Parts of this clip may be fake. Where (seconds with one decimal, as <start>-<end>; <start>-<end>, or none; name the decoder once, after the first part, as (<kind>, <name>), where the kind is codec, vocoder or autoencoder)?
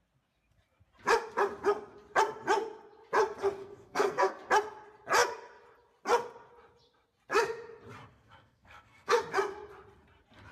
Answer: 3.6-4.3 (codec, SNAC); 8.1-9.2